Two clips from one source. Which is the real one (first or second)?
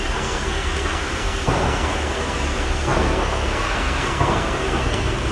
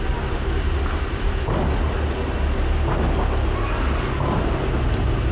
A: second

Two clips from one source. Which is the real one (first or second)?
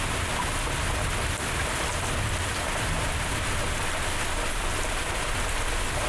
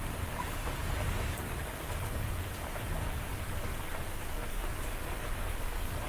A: first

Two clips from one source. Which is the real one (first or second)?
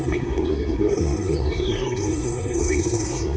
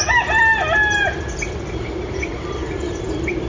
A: second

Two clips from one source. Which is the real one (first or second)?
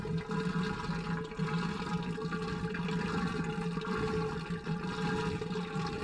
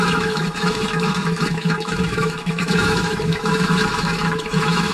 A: first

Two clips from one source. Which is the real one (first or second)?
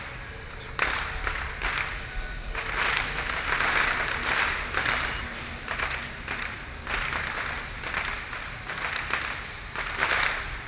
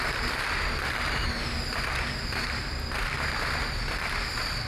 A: second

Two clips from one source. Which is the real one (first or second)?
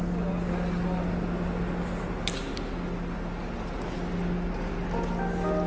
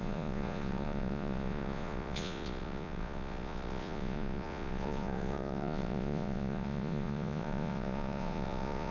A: first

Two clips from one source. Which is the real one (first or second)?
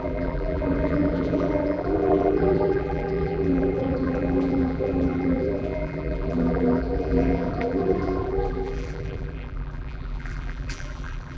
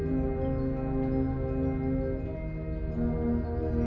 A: second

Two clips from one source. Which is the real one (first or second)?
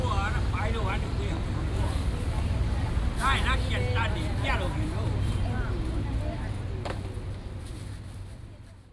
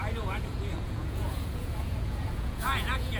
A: first